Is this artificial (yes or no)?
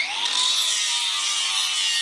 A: no